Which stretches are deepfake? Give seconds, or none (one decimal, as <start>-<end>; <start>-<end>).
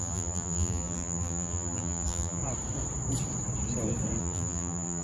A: 0.0-2.4; 4.2-5.0